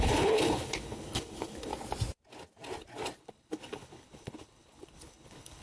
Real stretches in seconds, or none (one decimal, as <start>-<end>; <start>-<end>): 1.7-3.2